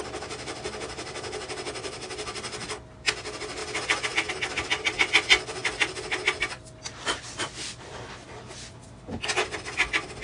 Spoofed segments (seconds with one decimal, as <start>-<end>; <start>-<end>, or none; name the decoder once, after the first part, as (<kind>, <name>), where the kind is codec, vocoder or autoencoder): none